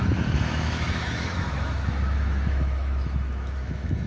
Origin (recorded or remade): remade